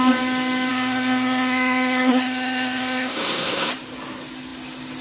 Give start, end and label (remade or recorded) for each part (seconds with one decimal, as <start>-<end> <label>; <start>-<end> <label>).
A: 0.0-0.7 recorded; 0.7-3.7 remade; 3.7-5.0 recorded

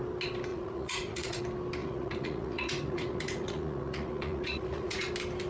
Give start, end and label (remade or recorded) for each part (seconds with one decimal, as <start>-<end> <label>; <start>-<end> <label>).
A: 0.0-0.5 recorded; 0.5-1.4 remade; 1.4-1.8 recorded; 1.8-5.1 remade; 5.1-5.5 recorded

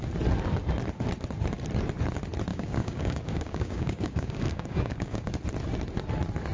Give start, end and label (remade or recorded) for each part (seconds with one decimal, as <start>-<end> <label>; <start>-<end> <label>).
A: 0.0-2.5 recorded; 2.5-5.3 remade; 5.3-6.5 recorded

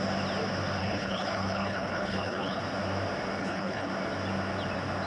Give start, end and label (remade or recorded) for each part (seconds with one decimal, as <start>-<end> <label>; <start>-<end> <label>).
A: 0.0-0.8 recorded; 0.8-2.6 remade; 2.6-3.4 recorded; 3.4-3.9 remade; 3.9-5.1 recorded

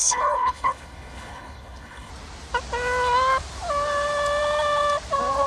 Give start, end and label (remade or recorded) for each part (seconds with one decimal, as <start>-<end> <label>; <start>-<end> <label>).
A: 0.0-2.1 remade; 2.1-5.5 recorded

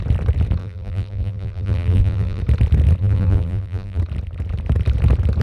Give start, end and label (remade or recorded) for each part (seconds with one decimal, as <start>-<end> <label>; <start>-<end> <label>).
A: 0.0-0.6 recorded; 0.6-2.4 remade; 2.4-3.0 recorded; 3.0-4.0 remade; 4.0-5.4 recorded

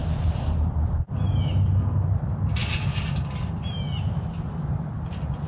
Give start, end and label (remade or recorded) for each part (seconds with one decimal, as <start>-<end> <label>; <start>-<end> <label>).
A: 0.0-0.7 remade; 0.7-5.5 recorded